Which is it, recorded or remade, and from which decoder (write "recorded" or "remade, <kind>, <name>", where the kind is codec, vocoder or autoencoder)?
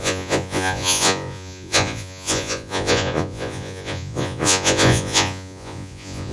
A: remade, vocoder, Vocos